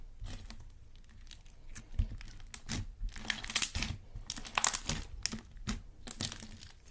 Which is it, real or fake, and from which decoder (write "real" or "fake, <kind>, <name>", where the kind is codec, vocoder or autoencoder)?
real